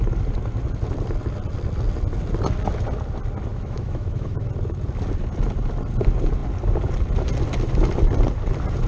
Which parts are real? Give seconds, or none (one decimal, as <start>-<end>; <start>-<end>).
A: 0.0-3.5; 4.5-8.9